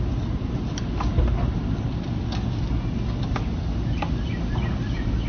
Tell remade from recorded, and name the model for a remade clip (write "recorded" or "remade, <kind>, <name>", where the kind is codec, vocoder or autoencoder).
recorded